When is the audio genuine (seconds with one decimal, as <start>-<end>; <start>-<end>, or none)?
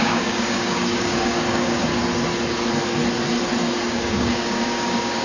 1.9-3.9